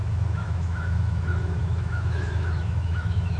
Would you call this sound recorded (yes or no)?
no